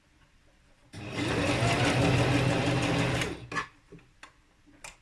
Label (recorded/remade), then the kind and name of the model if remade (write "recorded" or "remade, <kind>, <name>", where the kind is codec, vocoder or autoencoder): recorded